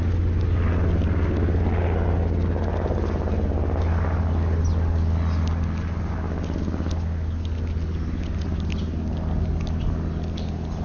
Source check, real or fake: real